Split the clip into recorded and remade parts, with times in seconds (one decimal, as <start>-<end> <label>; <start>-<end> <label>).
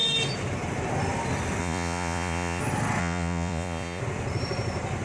0.0-1.6 recorded; 1.6-2.6 remade; 2.6-3.0 recorded; 3.0-4.0 remade; 4.0-5.0 recorded